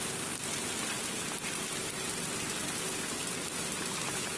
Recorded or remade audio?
recorded